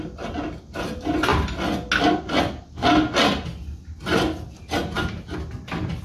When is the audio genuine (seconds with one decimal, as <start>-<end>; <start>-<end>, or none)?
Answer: 0.0-6.0